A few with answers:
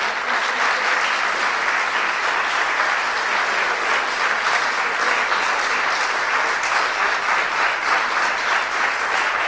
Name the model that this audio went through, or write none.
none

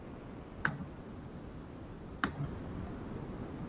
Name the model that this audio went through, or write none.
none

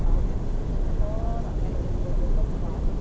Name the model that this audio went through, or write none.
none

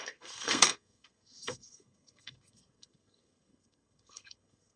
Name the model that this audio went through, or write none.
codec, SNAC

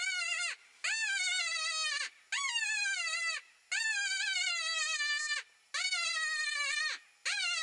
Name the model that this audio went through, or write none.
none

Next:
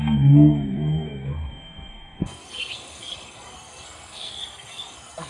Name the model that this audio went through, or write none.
codec, SNAC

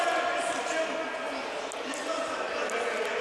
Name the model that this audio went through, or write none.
none